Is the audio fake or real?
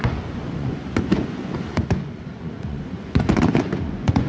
fake